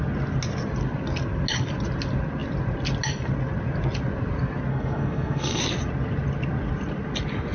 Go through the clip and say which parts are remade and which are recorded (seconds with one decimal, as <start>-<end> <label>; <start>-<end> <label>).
0.0-4.7 recorded; 4.7-5.6 remade; 5.6-7.5 recorded